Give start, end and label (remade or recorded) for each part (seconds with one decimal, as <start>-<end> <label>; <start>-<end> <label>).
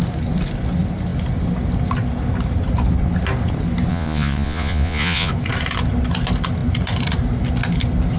0.0-3.9 recorded; 3.9-5.3 remade; 5.3-8.2 recorded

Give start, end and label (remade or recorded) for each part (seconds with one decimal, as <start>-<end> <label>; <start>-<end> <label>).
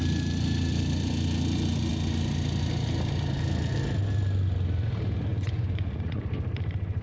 0.0-5.3 recorded; 5.3-6.2 remade; 6.2-7.0 recorded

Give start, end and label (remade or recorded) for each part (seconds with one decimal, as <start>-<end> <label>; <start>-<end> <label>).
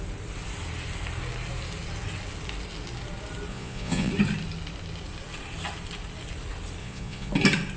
0.0-3.5 recorded; 3.5-4.1 remade; 4.1-6.8 recorded; 6.8-7.3 remade; 7.3-7.8 recorded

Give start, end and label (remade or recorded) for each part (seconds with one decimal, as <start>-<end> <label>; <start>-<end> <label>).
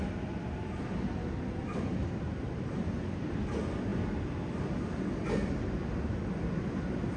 0.0-1.9 recorded; 1.9-3.3 remade; 3.3-7.2 recorded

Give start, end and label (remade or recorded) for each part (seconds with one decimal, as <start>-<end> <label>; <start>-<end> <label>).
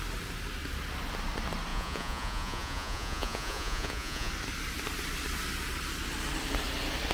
0.0-1.7 recorded; 1.7-4.3 remade; 4.3-7.1 recorded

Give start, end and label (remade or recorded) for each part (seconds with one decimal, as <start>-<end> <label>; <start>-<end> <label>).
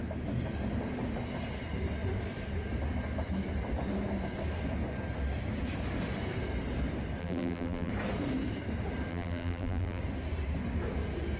0.0-7.2 recorded; 7.2-7.9 remade; 7.9-9.1 recorded; 9.1-10.0 remade; 10.0-11.4 recorded